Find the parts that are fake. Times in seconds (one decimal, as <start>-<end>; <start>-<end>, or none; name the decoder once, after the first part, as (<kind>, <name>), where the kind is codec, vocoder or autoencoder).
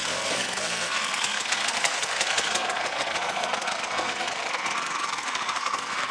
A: 0.0-6.1 (codec, SNAC)